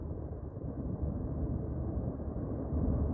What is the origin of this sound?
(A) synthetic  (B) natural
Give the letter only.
B